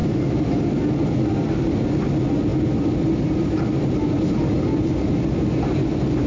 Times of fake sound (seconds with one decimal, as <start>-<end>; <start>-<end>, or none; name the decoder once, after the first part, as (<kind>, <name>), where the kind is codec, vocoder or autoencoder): 0.0-0.7 (vocoder, BigVGAN v2)